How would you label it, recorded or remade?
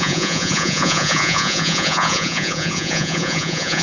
remade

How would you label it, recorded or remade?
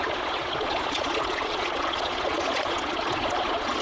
remade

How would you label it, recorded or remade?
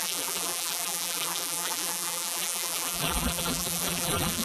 remade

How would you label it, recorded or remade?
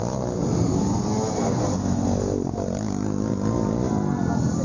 recorded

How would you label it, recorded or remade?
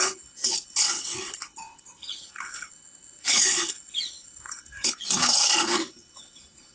remade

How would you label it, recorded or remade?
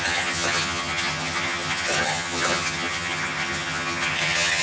remade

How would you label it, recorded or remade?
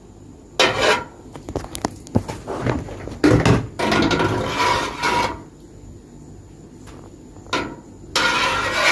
recorded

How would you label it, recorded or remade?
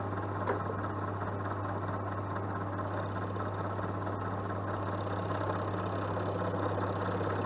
recorded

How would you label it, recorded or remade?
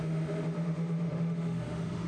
remade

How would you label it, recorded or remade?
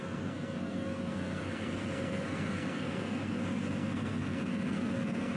remade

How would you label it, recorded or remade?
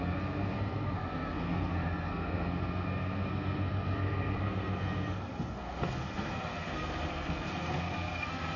remade